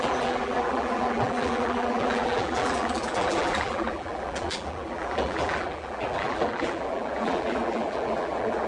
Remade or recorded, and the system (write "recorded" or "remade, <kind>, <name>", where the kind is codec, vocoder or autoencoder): remade, vocoder, BigVGAN v2